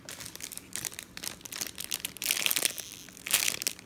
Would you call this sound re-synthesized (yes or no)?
no